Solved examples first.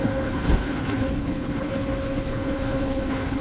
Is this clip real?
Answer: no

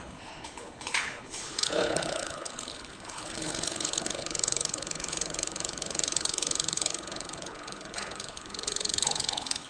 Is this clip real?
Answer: no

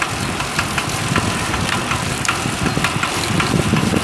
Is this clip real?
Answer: yes